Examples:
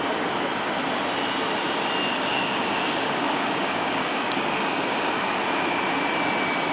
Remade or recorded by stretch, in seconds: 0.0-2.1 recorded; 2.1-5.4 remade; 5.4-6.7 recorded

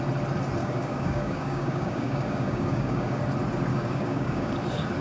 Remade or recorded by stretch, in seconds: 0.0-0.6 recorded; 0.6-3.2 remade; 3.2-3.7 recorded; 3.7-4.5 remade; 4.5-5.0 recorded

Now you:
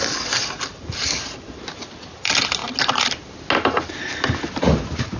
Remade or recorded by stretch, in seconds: 0.0-5.2 recorded